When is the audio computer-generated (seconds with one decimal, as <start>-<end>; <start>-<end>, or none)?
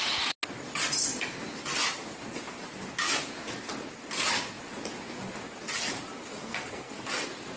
6.3-7.1